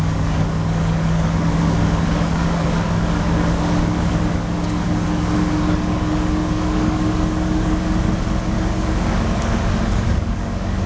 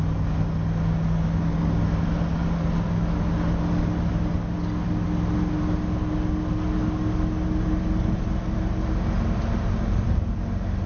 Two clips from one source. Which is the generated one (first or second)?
first